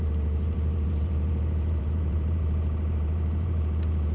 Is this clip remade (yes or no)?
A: yes